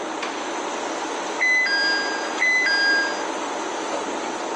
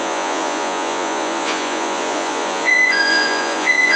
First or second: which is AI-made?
second